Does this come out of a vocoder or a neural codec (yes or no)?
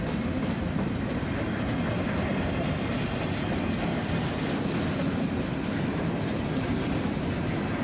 no